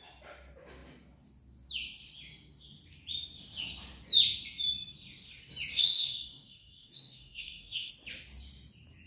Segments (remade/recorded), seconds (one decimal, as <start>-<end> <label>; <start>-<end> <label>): 0.0-5.7 recorded; 5.7-7.9 remade; 7.9-9.1 recorded

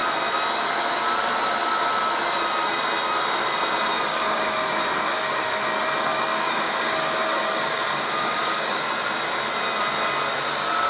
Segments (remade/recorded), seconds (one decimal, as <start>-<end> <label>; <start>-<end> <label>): 0.0-4.1 recorded; 4.1-5.6 remade; 5.6-6.1 recorded; 6.1-8.9 remade; 8.9-10.9 recorded

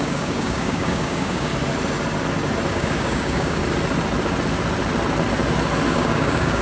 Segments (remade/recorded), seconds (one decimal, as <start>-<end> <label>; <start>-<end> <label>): 0.0-1.5 remade; 1.5-2.7 recorded; 2.7-3.6 remade; 3.6-5.9 recorded; 5.9-6.6 remade

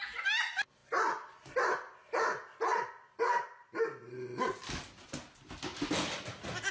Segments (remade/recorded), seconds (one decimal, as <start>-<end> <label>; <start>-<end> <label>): 0.0-6.7 recorded

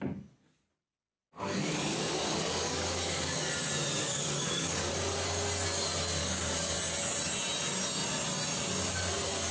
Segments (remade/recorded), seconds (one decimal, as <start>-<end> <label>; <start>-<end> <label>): 0.0-1.9 recorded; 1.9-3.5 remade; 3.5-4.0 recorded; 4.0-4.9 remade; 4.9-6.2 recorded; 6.2-6.8 remade; 6.8-9.5 recorded

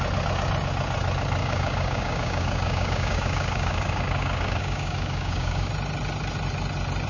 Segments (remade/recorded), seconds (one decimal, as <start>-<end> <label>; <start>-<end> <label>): 0.0-1.4 recorded; 1.4-5.7 remade; 5.7-7.1 recorded

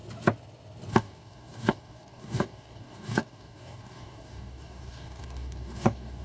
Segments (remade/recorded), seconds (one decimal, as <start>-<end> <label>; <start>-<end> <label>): 0.0-0.9 recorded; 0.9-6.2 remade